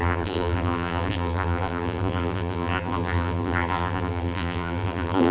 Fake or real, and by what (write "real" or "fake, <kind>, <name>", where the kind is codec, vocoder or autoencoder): fake, vocoder, BigVGAN v2